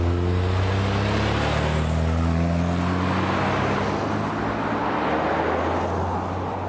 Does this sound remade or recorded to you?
recorded